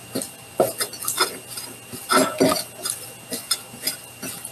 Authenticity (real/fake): real